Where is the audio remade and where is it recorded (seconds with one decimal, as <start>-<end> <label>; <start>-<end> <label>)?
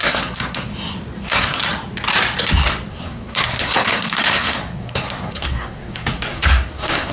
0.0-0.7 remade; 0.7-1.2 recorded; 1.2-1.6 remade; 1.6-2.9 recorded; 2.9-7.1 remade